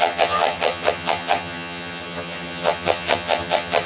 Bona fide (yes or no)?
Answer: no